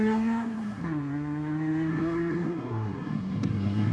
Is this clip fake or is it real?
fake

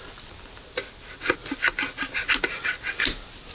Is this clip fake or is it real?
real